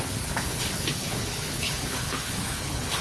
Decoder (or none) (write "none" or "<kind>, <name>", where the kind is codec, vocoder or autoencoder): codec, HILCodec